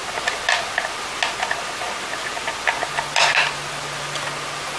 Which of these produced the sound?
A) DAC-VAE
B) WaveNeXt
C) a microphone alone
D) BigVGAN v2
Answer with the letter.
C